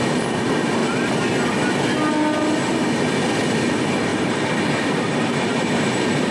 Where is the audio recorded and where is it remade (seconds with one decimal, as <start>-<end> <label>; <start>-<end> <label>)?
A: 0.0-4.1 recorded; 4.1-6.3 remade